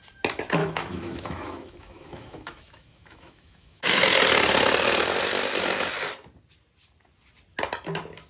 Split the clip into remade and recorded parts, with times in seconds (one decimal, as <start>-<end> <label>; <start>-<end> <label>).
0.0-0.6 recorded; 0.6-4.0 remade; 4.0-8.3 recorded